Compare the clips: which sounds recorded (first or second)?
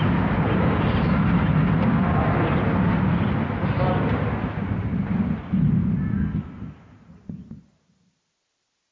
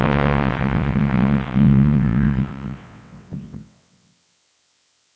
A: first